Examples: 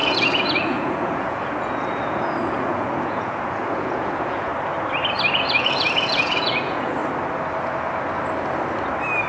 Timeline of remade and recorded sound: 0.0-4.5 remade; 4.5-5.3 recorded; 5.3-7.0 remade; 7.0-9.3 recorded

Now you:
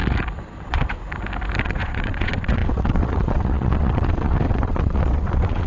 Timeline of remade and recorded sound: 0.0-0.6 recorded; 0.6-1.0 remade; 1.0-1.6 recorded; 1.6-5.7 remade

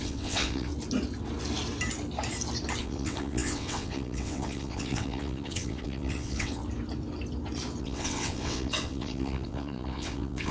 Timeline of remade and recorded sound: 0.0-0.7 remade; 0.7-2.8 recorded; 2.8-6.6 remade; 6.6-7.8 recorded; 7.8-10.5 remade

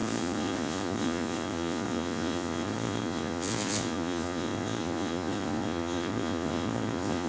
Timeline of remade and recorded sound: 0.0-7.3 remade

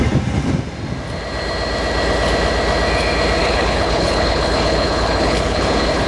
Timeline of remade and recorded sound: 0.0-3.4 recorded; 3.4-6.1 remade

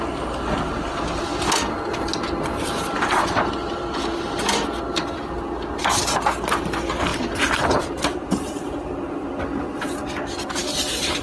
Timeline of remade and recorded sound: 0.0-7.1 recorded; 7.1-9.3 remade; 9.3-11.2 recorded

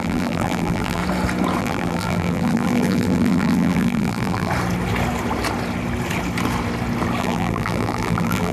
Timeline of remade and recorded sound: 0.0-1.0 remade; 1.0-1.6 recorded; 1.6-4.5 remade; 4.5-7.2 recorded; 7.2-8.5 remade